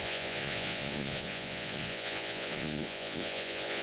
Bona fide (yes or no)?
no